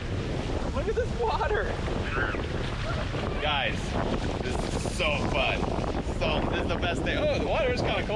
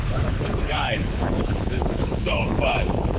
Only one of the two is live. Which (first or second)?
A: first